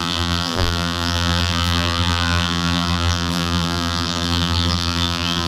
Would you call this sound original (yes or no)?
no